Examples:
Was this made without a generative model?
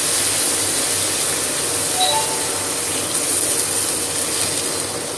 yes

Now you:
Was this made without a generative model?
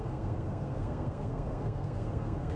no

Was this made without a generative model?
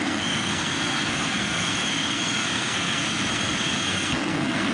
no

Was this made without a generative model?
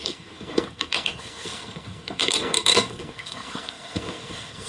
no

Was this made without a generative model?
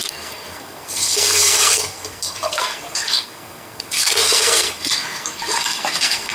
no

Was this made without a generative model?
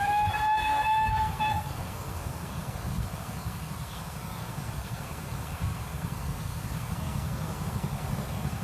no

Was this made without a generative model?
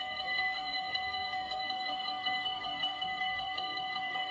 no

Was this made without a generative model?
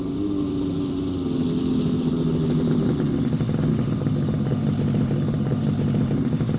yes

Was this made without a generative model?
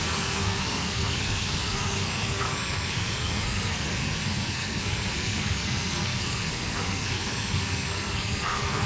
no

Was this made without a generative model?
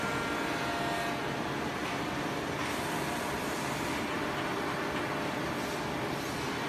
yes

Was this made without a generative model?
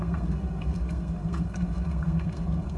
no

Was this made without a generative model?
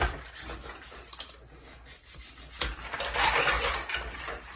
yes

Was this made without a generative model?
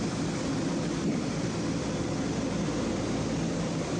yes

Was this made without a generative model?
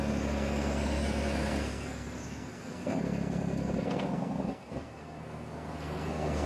no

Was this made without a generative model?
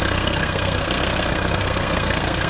no